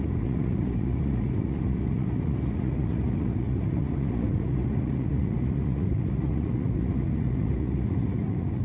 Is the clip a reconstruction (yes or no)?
yes